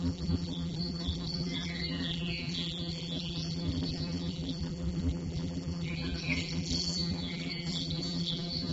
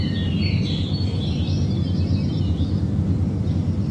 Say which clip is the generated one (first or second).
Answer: first